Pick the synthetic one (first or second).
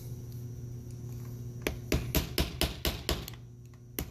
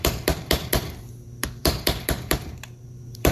second